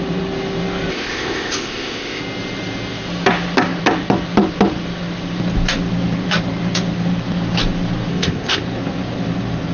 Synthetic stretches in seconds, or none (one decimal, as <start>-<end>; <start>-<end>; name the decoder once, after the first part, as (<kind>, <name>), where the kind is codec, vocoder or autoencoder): 0.9-2.2 (codec, ZipCodec); 8.1-8.6